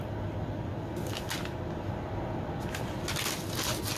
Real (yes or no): yes